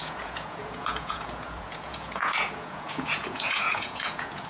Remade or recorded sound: remade